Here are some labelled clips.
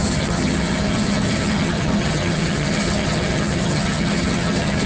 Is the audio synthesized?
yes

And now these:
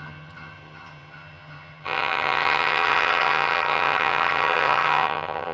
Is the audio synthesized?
yes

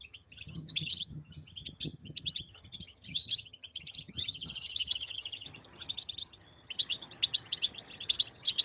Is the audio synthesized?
yes